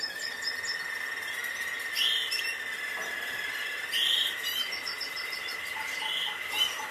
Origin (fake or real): real